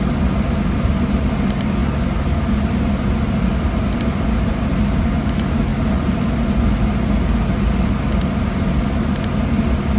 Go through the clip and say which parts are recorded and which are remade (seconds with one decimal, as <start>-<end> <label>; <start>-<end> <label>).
0.0-10.0 recorded